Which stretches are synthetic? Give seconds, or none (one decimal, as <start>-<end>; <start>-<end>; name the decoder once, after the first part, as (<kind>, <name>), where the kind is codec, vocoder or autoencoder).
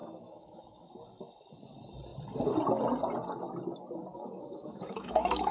0.0-0.8 (autoencoder, DAC-VAE); 4.1-5.5